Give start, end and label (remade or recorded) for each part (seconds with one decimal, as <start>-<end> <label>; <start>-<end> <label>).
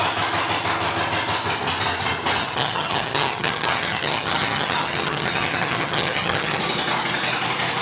0.0-2.4 recorded; 2.4-6.6 remade; 6.6-7.8 recorded